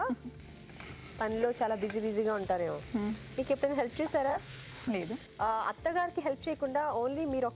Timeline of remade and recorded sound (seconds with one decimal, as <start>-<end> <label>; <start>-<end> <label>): 0.0-4.3 recorded; 4.3-4.9 remade; 4.9-7.5 recorded

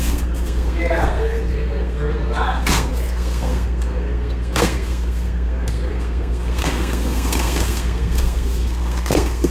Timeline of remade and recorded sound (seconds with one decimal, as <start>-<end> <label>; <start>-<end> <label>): 0.0-9.5 remade

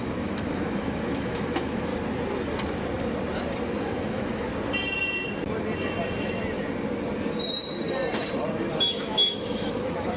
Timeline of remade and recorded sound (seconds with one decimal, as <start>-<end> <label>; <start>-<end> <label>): 0.0-1.9 remade; 1.9-3.8 recorded; 3.8-4.5 remade; 4.5-8.8 recorded; 8.8-10.2 remade

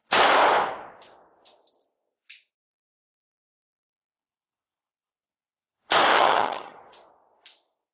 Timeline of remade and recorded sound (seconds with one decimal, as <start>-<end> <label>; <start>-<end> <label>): 0.0-6.1 recorded; 6.1-6.8 remade; 6.8-7.9 recorded